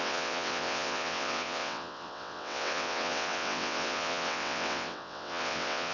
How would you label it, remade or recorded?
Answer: remade